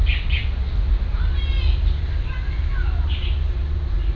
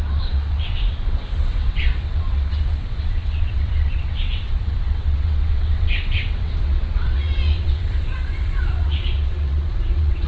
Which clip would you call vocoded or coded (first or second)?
second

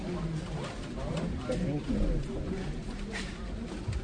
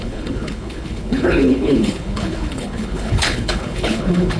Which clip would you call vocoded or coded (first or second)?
second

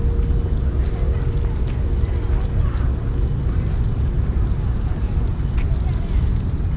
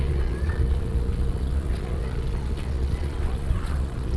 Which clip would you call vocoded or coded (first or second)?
second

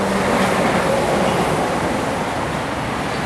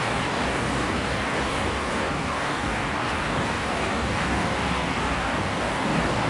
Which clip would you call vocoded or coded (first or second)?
second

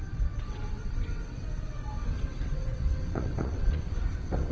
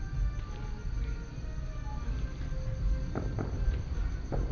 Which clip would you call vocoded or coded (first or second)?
first